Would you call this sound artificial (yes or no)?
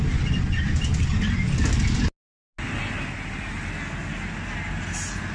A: no